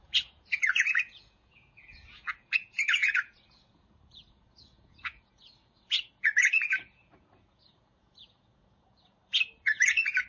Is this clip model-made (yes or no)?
yes